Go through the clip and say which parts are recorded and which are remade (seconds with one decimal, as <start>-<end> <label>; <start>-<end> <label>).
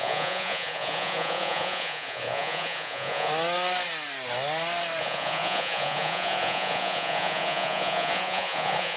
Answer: 0.0-3.3 remade; 3.3-5.0 recorded; 5.0-9.0 remade